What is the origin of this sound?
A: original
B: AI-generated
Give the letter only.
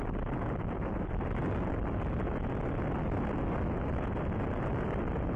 A